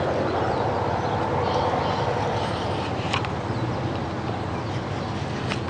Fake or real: real